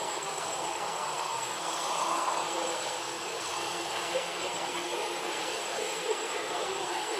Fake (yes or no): yes